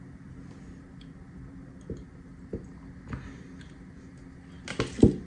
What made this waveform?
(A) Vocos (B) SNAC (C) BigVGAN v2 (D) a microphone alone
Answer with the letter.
D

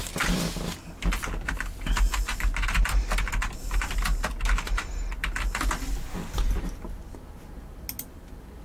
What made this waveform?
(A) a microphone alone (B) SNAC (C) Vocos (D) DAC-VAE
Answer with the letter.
A